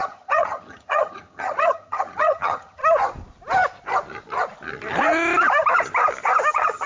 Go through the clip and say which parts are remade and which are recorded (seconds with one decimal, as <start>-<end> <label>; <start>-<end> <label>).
0.0-2.8 remade; 2.8-6.5 recorded; 6.5-6.9 remade